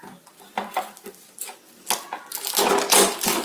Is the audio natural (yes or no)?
yes